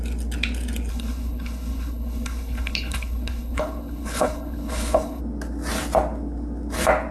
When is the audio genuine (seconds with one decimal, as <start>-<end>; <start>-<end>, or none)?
0.0-0.9; 5.2-7.1

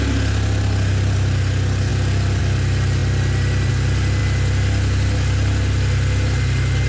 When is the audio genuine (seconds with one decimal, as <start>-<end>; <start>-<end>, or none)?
0.0-6.9

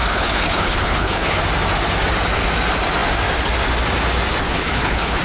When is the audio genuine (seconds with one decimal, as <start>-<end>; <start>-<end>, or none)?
1.4-4.4

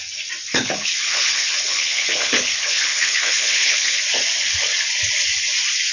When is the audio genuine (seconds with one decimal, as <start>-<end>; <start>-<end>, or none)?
0.0-0.5; 4.0-5.9

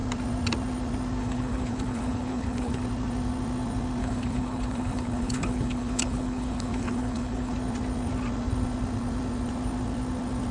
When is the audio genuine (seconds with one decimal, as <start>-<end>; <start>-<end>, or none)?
0.0-1.2; 2.8-4.0; 7.5-10.5

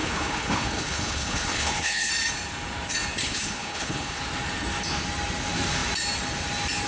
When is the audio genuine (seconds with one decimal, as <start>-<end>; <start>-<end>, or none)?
2.1-3.2; 4.2-6.9

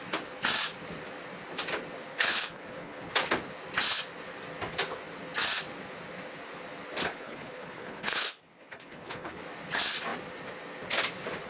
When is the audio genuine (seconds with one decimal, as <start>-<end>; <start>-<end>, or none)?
0.0-2.1; 3.1-7.0; 9.4-11.5

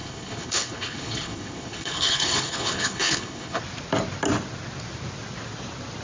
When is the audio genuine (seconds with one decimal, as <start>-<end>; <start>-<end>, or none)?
3.6-6.0